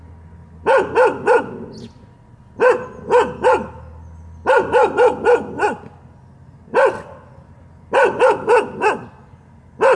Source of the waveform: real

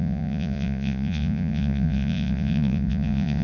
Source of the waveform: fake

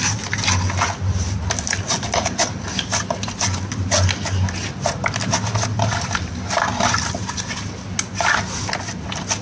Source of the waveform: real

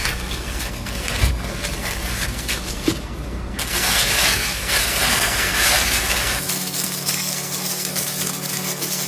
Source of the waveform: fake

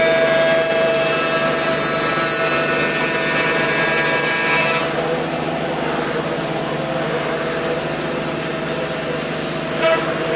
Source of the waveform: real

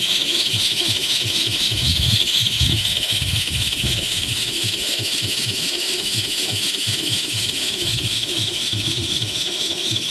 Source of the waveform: fake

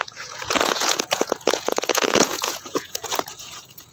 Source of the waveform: fake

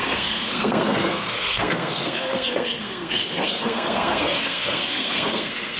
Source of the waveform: fake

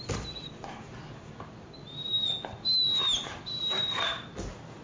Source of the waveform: real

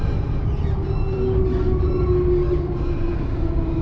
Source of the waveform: real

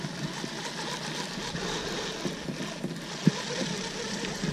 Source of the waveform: real